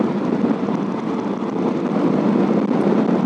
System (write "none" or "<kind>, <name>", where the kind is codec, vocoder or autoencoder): none